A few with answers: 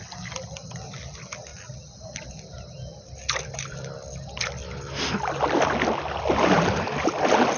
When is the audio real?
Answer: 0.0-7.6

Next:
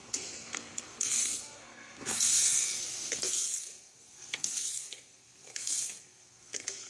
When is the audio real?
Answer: none